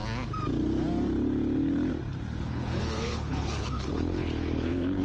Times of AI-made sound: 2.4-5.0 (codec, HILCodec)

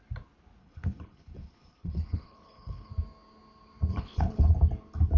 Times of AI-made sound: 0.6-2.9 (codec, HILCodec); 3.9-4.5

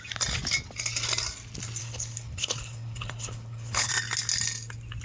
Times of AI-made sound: 1.8-3.9 (codec, HILCodec)

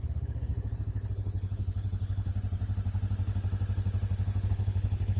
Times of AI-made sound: 0.0-2.3 (codec, HILCodec); 4.5-5.2

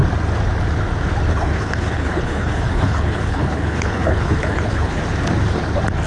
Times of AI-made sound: 1.3-5.0 (codec, HILCodec)

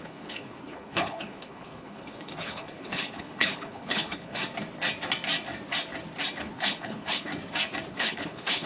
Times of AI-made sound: 0.0-4.4 (codec, HILCodec); 6.4-7.3; 7.9-8.7

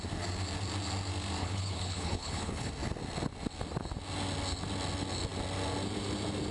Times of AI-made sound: 1.4-2.7 (codec, HILCodec)

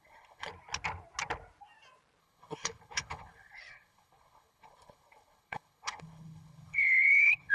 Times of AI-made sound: 0.0-0.5 (codec, HILCodec); 2.2-7.5